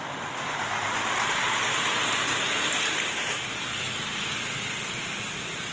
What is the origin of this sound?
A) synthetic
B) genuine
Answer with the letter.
B